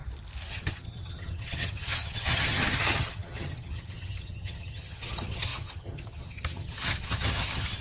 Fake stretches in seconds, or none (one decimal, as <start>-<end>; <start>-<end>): 0.5-7.8